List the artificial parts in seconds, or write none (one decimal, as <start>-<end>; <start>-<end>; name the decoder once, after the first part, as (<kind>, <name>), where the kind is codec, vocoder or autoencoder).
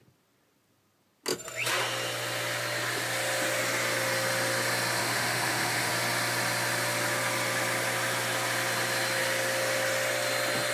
5.0-5.9 (autoencoder, DAC-VAE)